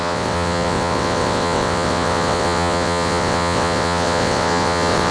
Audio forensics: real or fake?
fake